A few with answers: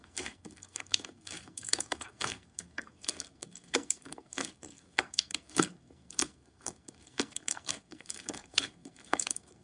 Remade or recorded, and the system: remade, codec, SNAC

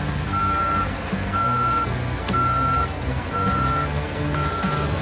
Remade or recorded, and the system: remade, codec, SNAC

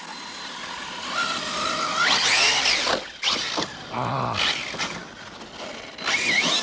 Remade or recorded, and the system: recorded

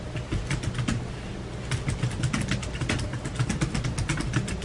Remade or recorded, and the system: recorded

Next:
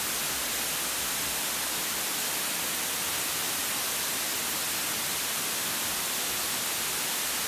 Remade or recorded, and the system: recorded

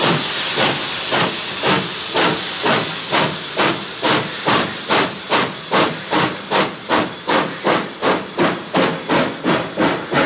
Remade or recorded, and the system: recorded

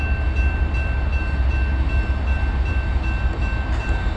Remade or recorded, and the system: recorded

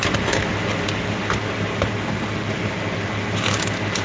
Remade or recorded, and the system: recorded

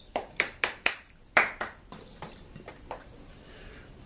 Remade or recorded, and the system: remade, vocoder, BigVGAN v2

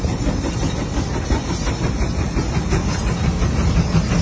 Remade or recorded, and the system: recorded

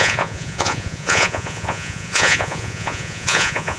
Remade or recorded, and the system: remade, vocoder, Vocos